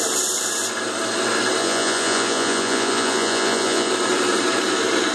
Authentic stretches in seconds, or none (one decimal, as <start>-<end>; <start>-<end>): 0.0-1.6; 3.9-5.1